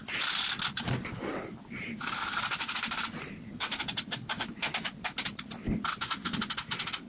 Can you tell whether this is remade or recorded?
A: recorded